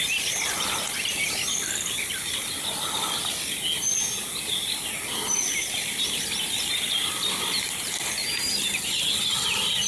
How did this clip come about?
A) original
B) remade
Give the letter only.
A